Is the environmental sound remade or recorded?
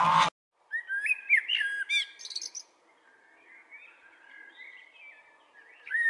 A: recorded